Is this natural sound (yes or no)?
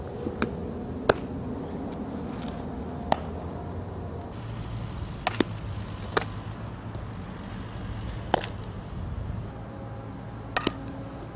yes